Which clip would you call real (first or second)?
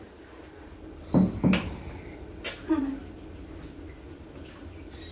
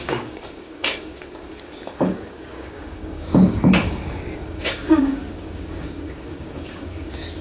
first